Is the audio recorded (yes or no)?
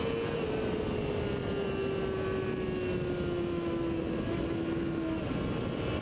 yes